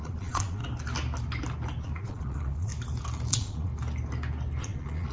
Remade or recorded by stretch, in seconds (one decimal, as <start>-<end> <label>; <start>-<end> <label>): 0.0-0.6 remade; 0.6-1.8 recorded; 1.8-2.7 remade; 2.7-3.3 recorded; 3.3-3.7 remade; 3.7-4.6 recorded; 4.6-5.1 remade